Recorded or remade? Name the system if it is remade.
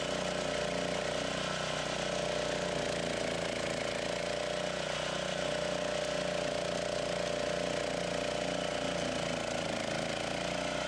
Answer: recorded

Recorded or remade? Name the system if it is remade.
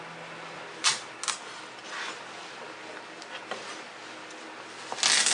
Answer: recorded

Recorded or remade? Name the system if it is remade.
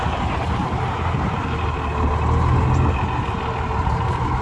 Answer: recorded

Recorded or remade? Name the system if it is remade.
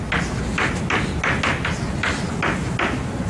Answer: recorded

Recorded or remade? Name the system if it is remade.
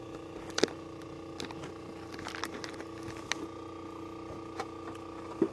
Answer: recorded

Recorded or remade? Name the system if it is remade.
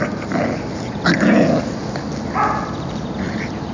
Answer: recorded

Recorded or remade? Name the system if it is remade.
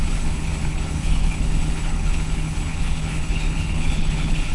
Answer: remade, codec, HILCodec